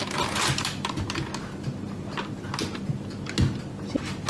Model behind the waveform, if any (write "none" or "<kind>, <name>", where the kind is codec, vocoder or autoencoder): none